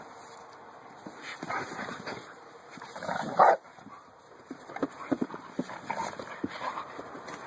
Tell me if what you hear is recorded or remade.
remade